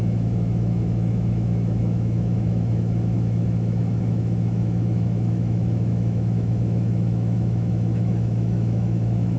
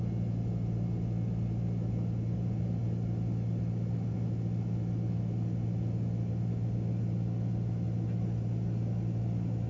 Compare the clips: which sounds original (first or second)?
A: second